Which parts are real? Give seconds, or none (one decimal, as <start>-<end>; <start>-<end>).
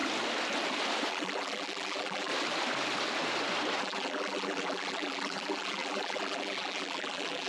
0.0-1.1; 2.3-3.8